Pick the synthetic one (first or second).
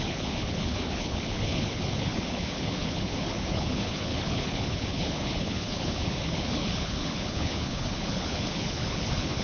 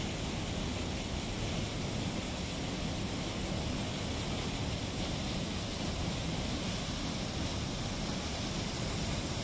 first